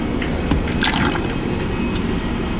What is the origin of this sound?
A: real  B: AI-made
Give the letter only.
A